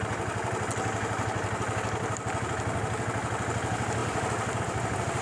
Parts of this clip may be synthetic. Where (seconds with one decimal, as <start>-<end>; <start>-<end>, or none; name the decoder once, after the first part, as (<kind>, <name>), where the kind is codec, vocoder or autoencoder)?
4.0-4.6 (vocoder, BigVGAN v2)

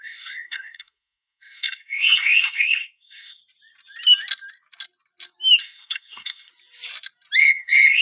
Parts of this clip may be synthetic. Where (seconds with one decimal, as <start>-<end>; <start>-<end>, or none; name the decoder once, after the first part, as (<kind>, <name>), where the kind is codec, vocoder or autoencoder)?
0.0-3.4 (codec, SNAC); 5.6-6.5; 7.4-8.0

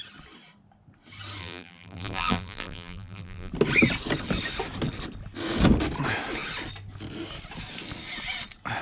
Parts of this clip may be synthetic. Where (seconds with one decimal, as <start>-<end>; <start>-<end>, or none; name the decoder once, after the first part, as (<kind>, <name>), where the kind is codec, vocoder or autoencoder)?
1.4-3.5 (vocoder, BigVGAN v2)